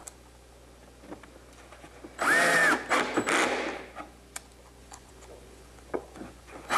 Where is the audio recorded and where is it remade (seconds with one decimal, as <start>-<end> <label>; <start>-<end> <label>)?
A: 0.0-4.8 recorded; 4.8-6.8 remade